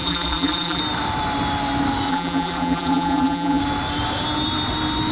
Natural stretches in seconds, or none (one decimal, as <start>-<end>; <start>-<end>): 0.8-2.1; 3.6-5.1